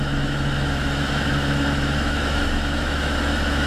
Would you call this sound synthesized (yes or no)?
yes